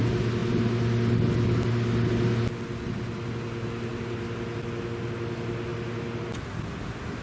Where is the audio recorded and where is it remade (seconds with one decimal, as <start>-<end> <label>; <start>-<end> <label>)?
0.0-7.2 recorded